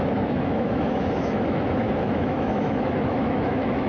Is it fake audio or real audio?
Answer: fake